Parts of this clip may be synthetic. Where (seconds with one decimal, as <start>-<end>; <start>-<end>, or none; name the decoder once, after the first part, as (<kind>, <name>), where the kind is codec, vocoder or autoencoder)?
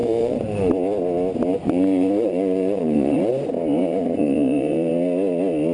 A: 0.0-0.7 (vocoder, Vocos); 1.5-3.3; 3.8-4.9